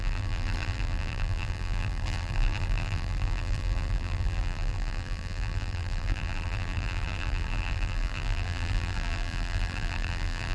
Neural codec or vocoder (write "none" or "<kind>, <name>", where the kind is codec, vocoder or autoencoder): vocoder, BigVGAN v2